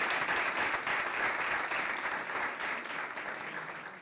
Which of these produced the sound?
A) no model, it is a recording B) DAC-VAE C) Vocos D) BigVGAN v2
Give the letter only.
A